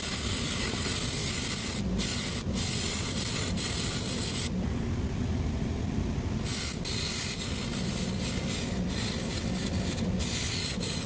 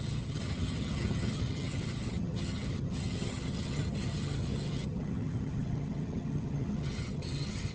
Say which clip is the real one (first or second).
first